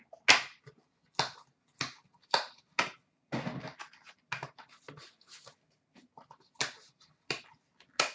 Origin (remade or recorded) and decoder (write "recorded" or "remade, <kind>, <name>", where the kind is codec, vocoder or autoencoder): recorded